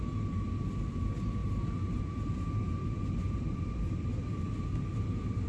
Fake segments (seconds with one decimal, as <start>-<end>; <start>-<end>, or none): 1.4-2.0; 3.2-4.1